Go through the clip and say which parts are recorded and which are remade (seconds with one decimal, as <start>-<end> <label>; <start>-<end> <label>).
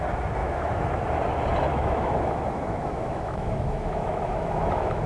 0.0-0.4 recorded; 0.4-1.0 remade; 1.0-1.7 recorded; 1.7-5.1 remade